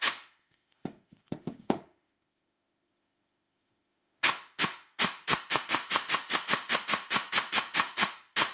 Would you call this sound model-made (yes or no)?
yes